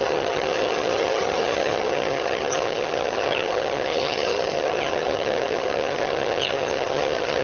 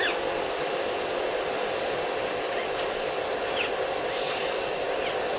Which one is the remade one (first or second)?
first